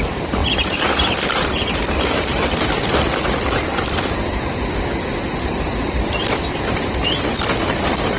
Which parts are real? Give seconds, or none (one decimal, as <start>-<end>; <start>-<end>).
none